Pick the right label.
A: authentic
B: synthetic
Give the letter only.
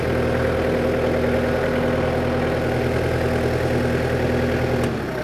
A